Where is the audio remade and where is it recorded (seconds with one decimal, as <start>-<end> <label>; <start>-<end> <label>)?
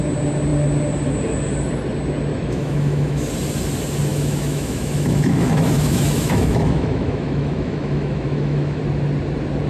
0.0-2.3 recorded; 2.3-3.3 remade; 3.3-4.1 recorded; 4.1-8.8 remade; 8.8-9.7 recorded